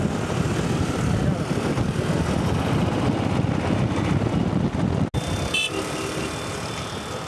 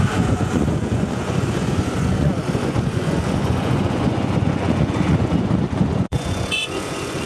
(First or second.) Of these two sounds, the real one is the first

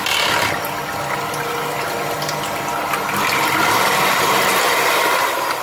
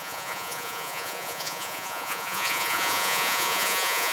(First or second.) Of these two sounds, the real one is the first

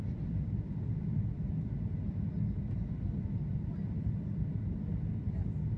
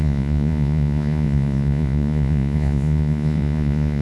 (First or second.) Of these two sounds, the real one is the first